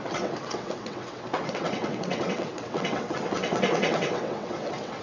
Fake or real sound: fake